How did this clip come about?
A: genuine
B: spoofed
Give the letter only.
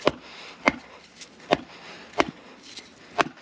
A